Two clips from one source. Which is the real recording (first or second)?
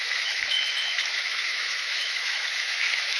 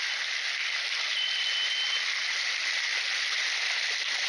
second